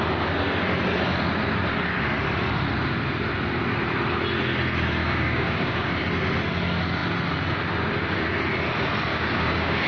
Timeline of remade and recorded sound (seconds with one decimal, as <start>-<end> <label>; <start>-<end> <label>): 0.0-5.0 recorded; 5.0-5.9 remade; 5.9-9.1 recorded; 9.1-9.9 remade

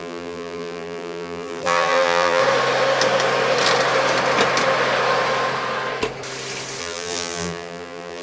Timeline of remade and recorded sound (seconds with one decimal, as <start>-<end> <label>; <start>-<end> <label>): 0.0-2.4 remade; 2.4-6.8 recorded; 6.8-8.2 remade

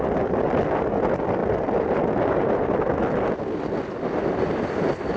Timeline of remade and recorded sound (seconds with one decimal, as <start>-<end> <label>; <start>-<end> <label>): 0.0-5.2 recorded

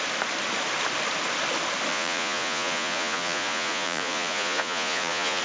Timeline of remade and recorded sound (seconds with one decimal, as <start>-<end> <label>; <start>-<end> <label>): 0.0-1.9 recorded; 1.9-5.4 remade

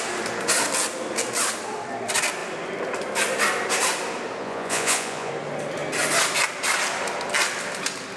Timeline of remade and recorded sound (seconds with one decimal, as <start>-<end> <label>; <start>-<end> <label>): 0.0-4.4 recorded; 4.4-5.3 remade; 5.3-8.2 recorded